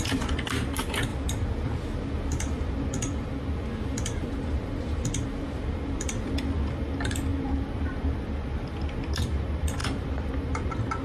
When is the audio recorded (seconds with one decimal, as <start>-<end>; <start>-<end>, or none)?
0.0-1.1; 5.6-7.3; 8.0-9.8; 10.3-11.0